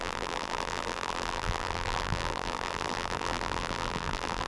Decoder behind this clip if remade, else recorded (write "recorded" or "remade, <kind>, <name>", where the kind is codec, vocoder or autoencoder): remade, vocoder, BigVGAN v2